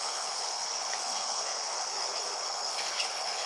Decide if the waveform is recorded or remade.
remade